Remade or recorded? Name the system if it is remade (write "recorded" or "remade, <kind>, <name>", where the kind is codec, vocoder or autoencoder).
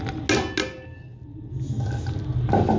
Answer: recorded